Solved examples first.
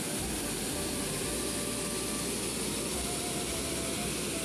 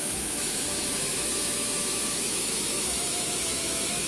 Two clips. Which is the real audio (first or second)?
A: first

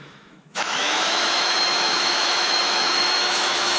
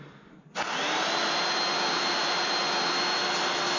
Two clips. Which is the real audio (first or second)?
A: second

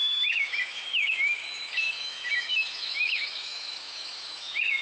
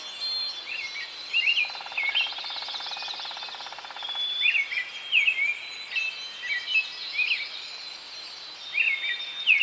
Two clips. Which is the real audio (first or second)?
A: second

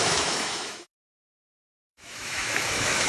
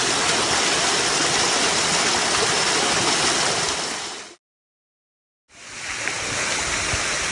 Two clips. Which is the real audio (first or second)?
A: second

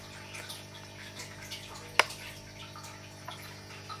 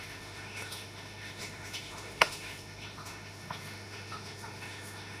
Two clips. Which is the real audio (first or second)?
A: first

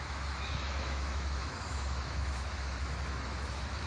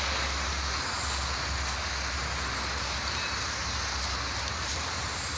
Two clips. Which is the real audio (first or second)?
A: second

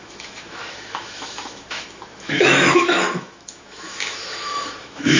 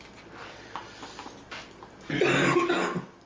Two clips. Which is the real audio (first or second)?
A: second